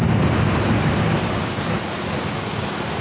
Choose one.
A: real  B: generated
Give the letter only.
A